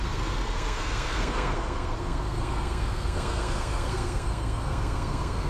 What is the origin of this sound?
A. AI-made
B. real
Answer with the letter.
A